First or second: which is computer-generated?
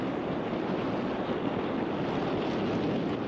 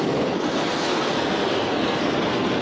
second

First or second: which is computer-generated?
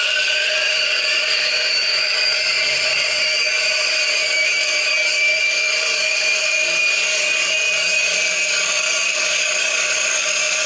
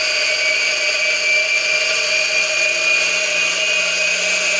first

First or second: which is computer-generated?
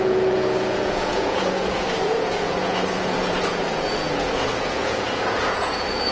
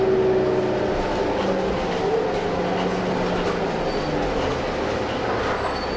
first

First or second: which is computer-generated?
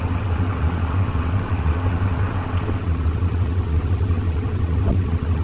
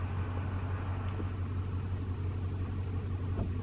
first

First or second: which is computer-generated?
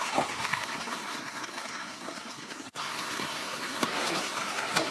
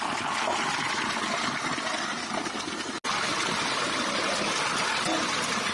first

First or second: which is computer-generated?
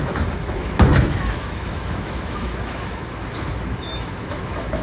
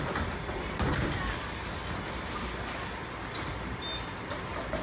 first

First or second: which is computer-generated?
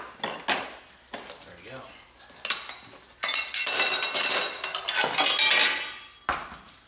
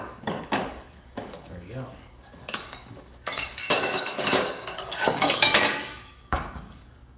second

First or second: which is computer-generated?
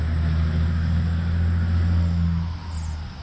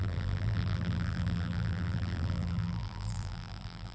second